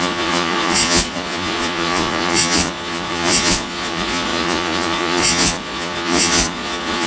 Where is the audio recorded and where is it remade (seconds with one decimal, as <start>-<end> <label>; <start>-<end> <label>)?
0.0-7.1 remade